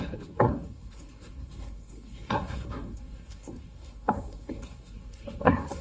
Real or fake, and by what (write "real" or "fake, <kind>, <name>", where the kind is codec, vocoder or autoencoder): fake, codec, SNAC